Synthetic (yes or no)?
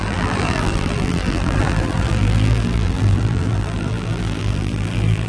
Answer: yes